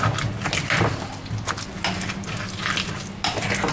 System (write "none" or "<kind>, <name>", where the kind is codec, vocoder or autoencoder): none